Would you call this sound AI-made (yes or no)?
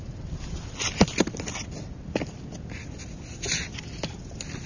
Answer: no